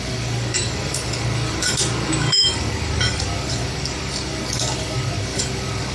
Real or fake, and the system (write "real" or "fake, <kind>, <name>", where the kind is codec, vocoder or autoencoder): fake, codec, DAC